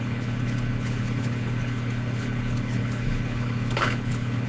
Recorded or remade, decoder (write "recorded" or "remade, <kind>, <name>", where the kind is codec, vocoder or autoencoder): remade, codec, HILCodec